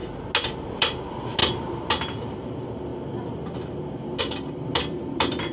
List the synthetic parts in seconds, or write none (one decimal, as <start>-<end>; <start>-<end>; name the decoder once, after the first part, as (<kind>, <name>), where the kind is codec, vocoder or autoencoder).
0.7-1.4 (vocoder, BigVGAN v2); 1.9-2.9; 4.2-5.5